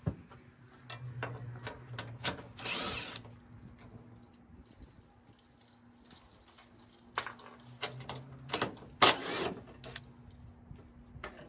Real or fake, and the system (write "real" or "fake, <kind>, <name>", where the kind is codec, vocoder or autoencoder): real